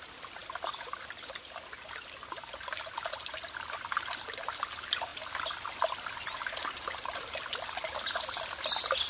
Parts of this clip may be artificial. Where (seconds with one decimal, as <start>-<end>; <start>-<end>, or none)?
none